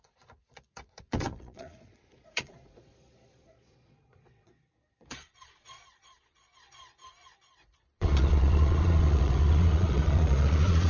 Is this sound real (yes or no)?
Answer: no